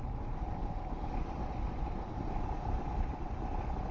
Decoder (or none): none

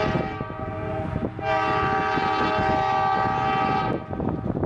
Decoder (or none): none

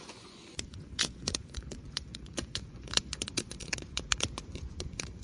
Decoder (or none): vocoder, Vocos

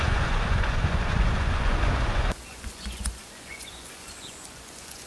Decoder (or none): vocoder, Vocos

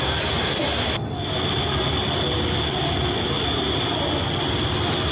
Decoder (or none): none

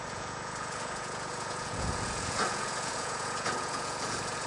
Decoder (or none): vocoder, Vocos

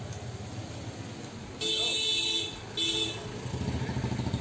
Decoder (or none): none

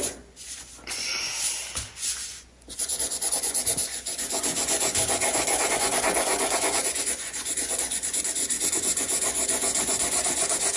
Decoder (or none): vocoder, Vocos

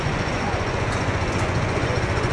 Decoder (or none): vocoder, Vocos